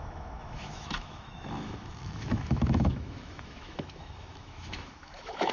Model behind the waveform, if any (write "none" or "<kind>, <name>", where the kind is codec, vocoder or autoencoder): autoencoder, DAC-VAE